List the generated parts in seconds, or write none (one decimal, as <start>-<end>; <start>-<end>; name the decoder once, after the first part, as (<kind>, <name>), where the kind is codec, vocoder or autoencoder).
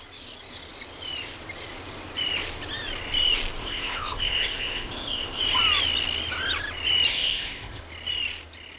3.6-5.4 (codec, ZipCodec); 7.1-7.8